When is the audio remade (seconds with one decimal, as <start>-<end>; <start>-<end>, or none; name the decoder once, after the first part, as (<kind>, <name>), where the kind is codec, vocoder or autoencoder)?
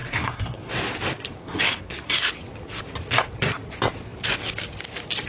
0.0-0.7 (codec, SNAC); 1.4-2.3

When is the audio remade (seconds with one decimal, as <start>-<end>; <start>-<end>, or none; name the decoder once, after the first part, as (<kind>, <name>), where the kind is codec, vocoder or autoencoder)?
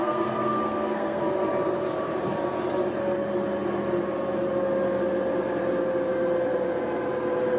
0.0-1.2 (codec, SNAC)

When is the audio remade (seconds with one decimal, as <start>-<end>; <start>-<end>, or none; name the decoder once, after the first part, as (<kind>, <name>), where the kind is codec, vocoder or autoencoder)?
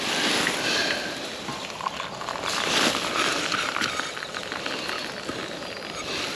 none